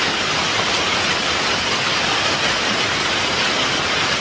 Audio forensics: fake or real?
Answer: real